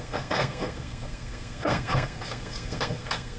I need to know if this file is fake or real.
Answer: fake